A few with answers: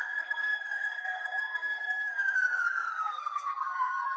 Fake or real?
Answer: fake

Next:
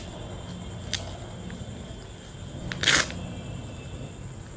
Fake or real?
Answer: real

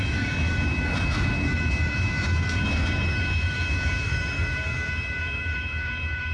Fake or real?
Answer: fake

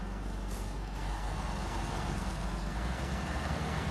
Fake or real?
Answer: fake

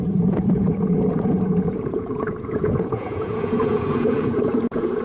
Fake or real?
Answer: fake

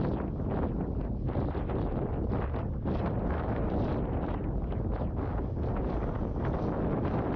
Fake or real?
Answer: real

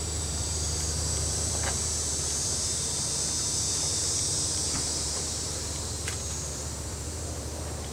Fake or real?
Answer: fake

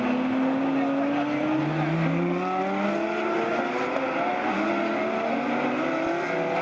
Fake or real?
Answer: real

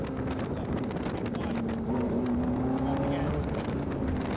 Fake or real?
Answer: real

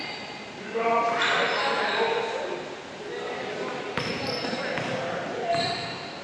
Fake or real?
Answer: real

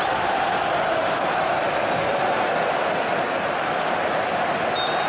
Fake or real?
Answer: real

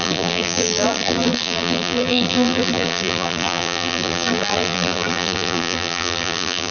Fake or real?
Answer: fake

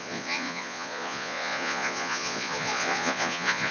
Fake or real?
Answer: fake